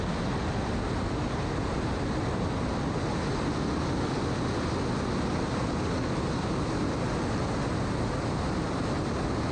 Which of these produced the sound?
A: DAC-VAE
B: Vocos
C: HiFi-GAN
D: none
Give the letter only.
D